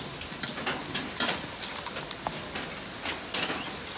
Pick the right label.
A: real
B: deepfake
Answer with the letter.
A